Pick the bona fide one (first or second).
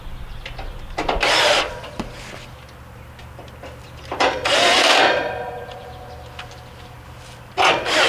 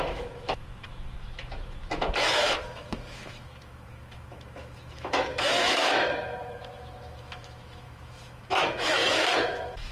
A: first